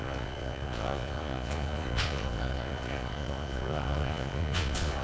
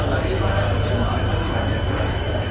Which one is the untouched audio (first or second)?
second